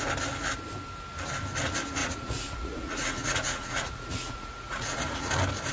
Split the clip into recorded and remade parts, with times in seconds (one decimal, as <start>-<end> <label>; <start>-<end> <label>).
0.0-2.0 recorded; 2.0-5.3 remade; 5.3-5.7 recorded